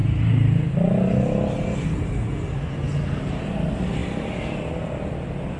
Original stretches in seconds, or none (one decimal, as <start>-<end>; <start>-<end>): 0.0-5.6